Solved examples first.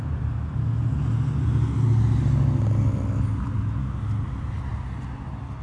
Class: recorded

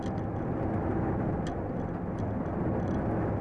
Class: recorded